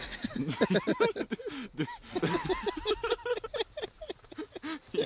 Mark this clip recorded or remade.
recorded